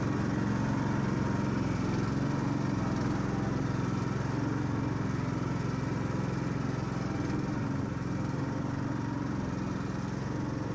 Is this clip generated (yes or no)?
no